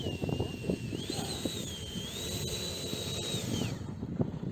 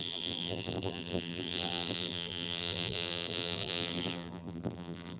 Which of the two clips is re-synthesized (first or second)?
second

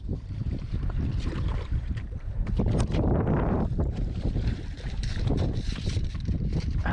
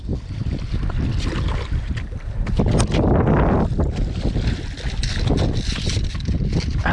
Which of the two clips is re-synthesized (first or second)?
first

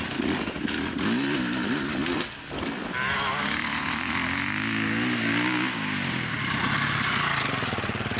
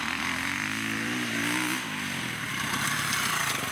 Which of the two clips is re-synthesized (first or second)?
second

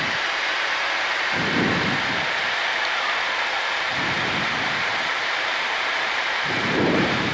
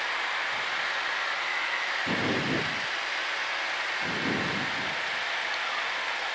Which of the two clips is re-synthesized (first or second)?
first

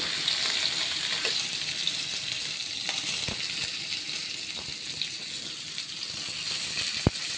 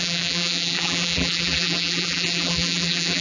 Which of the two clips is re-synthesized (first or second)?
second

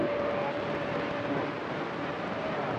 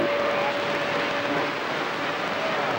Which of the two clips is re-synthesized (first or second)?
first